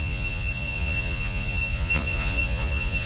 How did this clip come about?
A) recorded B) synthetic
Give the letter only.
B